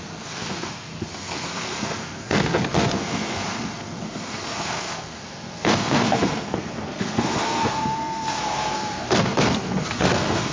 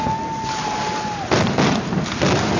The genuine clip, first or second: second